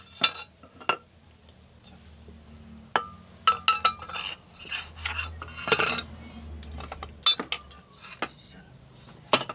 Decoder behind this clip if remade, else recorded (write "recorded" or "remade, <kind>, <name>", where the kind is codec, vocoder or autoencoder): recorded